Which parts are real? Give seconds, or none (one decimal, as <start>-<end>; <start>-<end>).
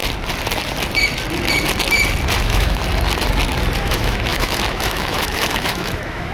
0.0-2.4; 2.8-3.8